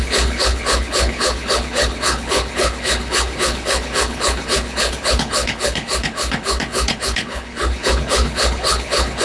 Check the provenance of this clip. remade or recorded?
remade